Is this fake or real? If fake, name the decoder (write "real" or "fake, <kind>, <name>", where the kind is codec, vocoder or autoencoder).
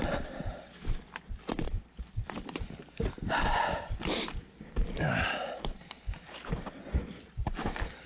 fake, vocoder, BigVGAN v2